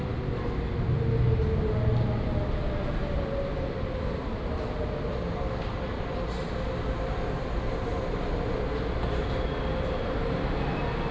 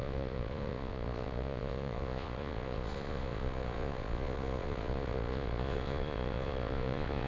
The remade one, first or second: second